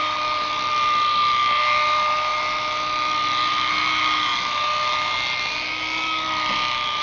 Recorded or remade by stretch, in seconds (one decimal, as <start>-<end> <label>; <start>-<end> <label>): 0.0-7.0 recorded